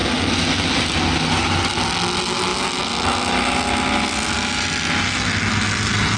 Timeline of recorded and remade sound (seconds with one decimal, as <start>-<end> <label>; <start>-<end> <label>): 0.0-6.2 recorded